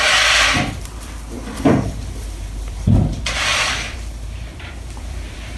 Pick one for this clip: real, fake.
fake